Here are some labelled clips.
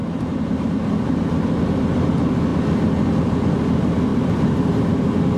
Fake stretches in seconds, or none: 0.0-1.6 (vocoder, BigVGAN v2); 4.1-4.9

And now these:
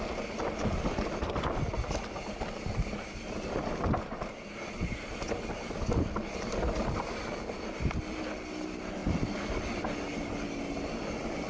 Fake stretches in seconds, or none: 9.0-9.7 (vocoder, BigVGAN v2)

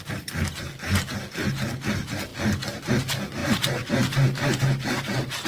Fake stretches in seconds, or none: 3.4-4.6 (vocoder, BigVGAN v2)

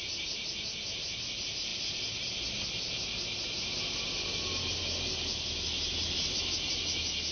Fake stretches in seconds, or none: none

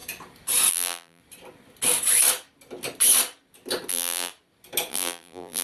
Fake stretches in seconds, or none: 0.7-1.2 (vocoder, BigVGAN v2); 3.9-4.3; 4.9-5.6

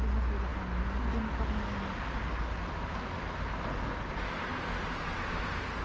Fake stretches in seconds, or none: none

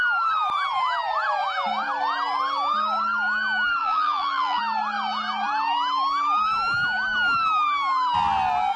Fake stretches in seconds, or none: 3.8-4.6 (vocoder, BigVGAN v2)

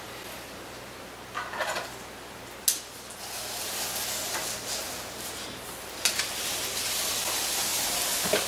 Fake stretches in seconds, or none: 7.7-8.5 (vocoder, BigVGAN v2)